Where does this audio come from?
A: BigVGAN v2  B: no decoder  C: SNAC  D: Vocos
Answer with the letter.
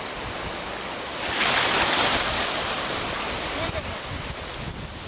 B